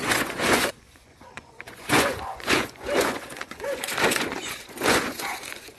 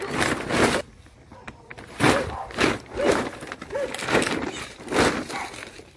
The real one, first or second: second